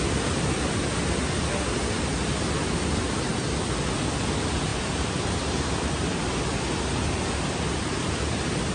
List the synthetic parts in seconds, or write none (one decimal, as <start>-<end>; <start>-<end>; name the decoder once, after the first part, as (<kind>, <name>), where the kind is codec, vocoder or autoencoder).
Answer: 4.7-6.3 (vocoder, BigVGAN v2)

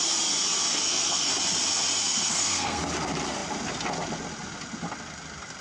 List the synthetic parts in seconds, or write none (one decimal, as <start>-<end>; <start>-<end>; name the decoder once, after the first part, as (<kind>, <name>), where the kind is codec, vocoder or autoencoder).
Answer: 0.7-1.3 (codec, SNAC); 2.0-2.8

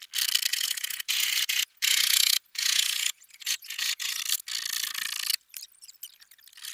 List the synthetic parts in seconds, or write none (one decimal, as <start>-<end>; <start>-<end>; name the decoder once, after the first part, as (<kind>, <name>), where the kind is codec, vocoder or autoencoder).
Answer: 0.5-4.2 (vocoder, Vocos)

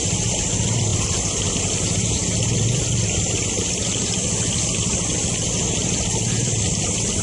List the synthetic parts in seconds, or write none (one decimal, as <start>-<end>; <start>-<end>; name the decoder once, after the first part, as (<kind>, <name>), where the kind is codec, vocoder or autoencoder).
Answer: none

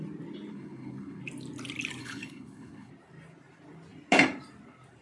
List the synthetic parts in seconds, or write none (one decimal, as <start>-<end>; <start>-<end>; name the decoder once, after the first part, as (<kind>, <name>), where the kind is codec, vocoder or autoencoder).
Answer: 0.5-1.2 (codec, HILCodec); 2.0-2.9

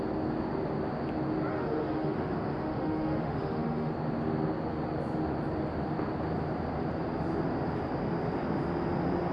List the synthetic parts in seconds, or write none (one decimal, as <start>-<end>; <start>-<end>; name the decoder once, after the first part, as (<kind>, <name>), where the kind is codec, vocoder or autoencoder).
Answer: 1.5-3.9 (autoencoder, DAC-VAE)